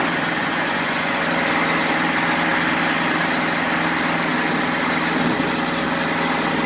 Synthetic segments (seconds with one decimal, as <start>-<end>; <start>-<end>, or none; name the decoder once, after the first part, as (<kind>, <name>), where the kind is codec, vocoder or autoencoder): 0.4-1.2 (vocoder, Vocos)